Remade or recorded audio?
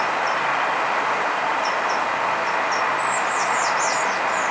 recorded